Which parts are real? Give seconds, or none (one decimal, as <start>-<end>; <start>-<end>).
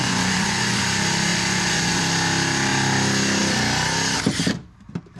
0.8-1.3; 2.0-5.2